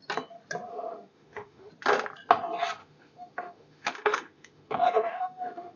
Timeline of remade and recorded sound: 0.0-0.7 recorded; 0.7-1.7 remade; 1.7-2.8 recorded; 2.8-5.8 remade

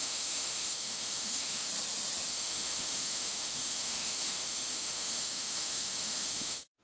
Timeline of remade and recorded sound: 0.0-1.7 remade; 1.7-2.3 recorded; 2.3-6.8 remade

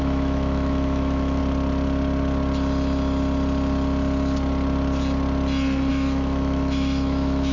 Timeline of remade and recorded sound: 0.0-1.4 remade; 1.4-5.9 recorded; 5.9-7.5 remade

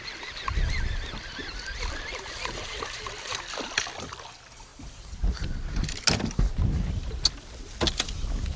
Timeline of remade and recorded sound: 0.0-8.6 recorded

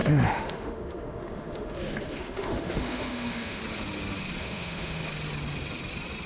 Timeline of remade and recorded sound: 0.0-3.6 remade; 3.6-4.4 recorded; 4.4-5.0 remade; 5.0-6.3 recorded

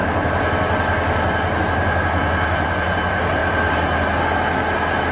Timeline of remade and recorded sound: 0.0-5.1 recorded

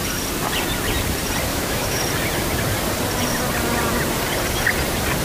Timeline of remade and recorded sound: 0.0-1.5 recorded; 1.5-2.0 remade; 2.0-5.2 recorded

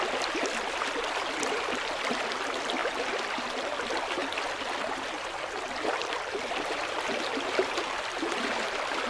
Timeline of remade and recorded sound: 0.0-9.1 recorded